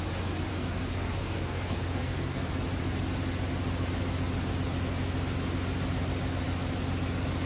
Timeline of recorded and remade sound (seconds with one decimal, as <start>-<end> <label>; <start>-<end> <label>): 0.0-0.5 recorded; 0.5-2.5 remade; 2.5-7.5 recorded